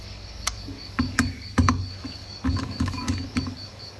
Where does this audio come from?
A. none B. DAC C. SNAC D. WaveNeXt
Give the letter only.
B